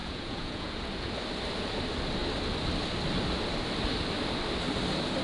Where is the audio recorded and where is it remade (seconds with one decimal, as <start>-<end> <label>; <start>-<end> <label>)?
0.0-1.1 remade; 1.1-5.2 recorded